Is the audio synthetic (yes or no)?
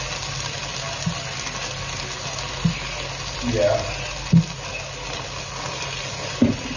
no